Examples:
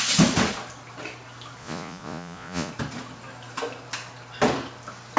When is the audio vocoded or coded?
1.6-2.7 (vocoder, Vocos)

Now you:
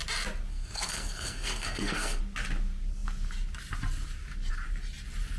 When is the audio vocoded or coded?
0.5-2.2 (codec, SNAC)

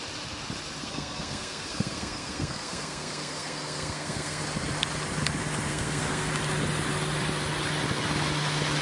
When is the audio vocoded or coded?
0.8-4.4 (codec, SNAC); 5.7-6.3

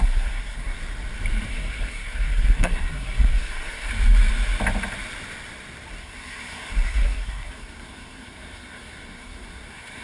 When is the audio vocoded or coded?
0.0-0.8 (codec, SNAC); 1.5-3.9; 6.0-10.0